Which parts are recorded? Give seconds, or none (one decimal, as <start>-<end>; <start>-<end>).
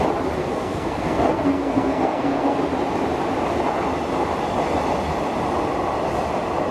0.0-0.4; 2.6-6.7